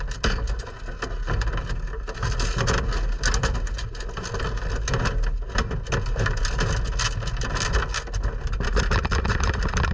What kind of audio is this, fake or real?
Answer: real